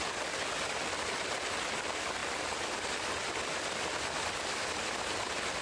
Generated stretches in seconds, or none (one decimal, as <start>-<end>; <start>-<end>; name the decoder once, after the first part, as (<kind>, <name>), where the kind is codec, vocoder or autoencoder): none

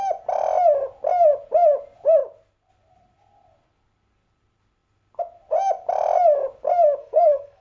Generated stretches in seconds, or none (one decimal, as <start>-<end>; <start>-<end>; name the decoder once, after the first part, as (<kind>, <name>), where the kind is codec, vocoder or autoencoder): 7.0-7.6 (codec, SNAC)

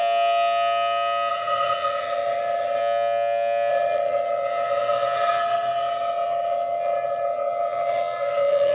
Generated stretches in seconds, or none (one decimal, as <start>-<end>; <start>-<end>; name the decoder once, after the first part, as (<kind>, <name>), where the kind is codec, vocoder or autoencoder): 1.3-2.8 (vocoder, HiFi-GAN); 3.7-8.7